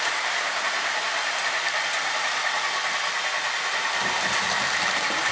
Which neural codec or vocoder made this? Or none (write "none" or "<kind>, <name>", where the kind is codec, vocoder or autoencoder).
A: none